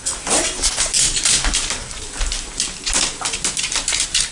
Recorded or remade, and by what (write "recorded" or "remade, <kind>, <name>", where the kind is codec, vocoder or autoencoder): recorded